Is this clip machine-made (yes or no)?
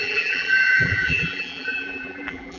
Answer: yes